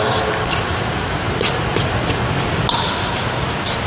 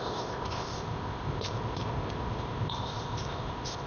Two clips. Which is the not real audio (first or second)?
second